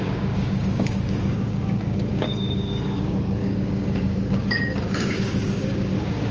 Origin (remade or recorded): remade